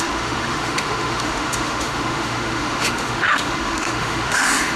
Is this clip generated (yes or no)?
yes